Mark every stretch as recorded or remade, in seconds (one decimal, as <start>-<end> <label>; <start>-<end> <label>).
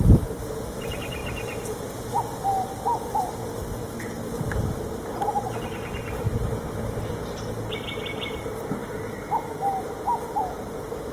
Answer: 0.0-11.1 recorded